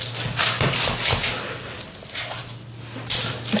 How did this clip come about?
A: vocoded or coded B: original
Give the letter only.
B